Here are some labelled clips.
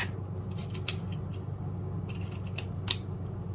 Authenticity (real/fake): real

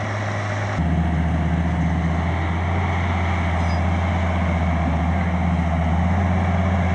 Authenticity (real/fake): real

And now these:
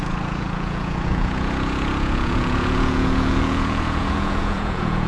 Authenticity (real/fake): fake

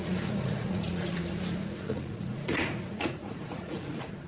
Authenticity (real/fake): fake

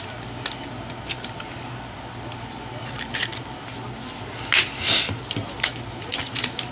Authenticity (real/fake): real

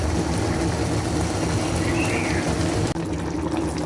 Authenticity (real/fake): real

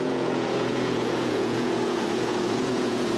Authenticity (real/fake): fake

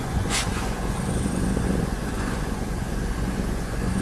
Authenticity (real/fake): fake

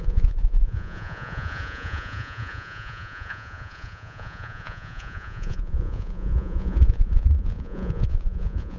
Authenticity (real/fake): fake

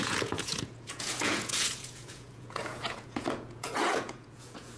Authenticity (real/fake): fake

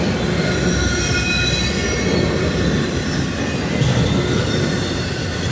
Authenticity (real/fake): real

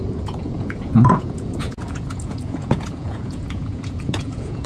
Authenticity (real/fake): fake